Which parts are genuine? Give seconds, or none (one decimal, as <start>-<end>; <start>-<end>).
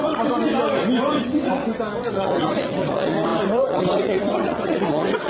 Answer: 0.5-1.1; 1.6-2.1